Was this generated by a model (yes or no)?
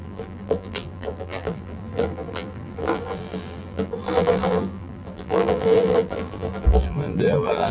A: yes